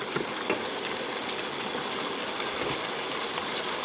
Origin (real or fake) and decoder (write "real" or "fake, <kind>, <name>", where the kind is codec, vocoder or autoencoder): real